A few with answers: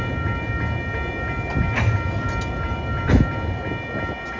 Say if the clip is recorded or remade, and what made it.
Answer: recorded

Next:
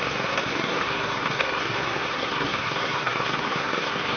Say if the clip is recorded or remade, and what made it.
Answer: remade, codec, SNAC